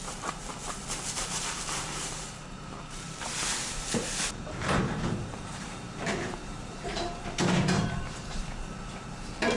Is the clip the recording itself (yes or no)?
no